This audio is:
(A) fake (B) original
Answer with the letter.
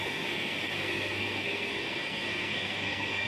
A